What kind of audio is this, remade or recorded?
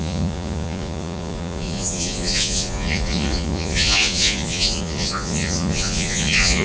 remade